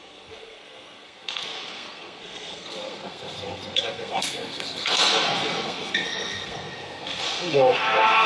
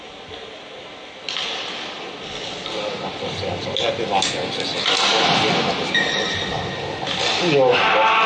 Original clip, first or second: second